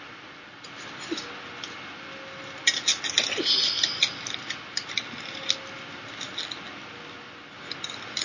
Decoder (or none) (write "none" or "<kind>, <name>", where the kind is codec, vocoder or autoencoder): none